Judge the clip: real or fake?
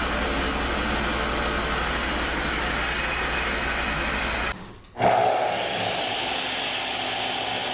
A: real